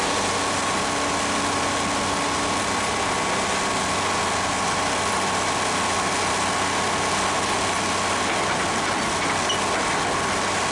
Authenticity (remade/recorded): recorded